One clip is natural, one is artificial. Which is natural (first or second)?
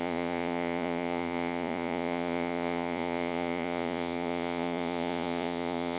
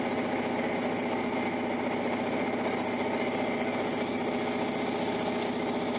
second